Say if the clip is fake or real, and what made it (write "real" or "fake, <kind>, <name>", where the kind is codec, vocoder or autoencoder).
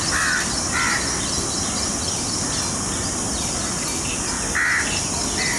real